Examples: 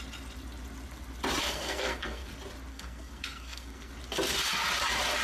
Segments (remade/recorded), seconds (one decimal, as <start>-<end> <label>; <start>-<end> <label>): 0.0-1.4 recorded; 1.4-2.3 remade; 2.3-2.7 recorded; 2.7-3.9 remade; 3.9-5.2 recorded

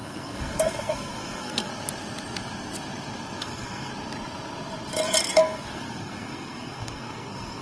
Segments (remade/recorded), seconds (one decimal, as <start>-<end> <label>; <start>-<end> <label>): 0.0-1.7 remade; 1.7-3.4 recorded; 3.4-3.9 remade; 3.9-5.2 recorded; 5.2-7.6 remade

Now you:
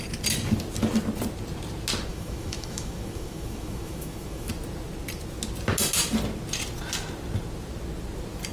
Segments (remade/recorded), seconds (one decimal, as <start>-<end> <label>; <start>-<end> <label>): 0.0-2.1 recorded; 2.1-4.5 remade; 4.5-8.5 recorded

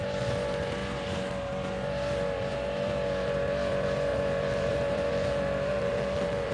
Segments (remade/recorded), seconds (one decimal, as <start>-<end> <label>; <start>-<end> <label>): 0.0-4.1 recorded; 4.1-6.5 remade

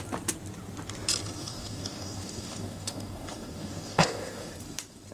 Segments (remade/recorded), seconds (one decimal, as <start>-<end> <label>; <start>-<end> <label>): 0.0-1.4 recorded; 1.4-4.5 remade; 4.5-5.1 recorded

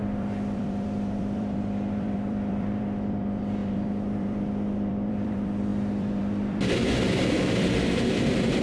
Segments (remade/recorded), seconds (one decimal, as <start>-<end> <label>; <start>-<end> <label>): 0.0-8.6 remade

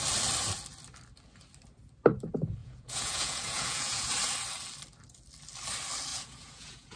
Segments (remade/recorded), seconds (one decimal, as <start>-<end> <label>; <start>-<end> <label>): 0.0-2.6 recorded; 2.6-4.1 remade; 4.1-6.1 recorded; 6.1-7.0 remade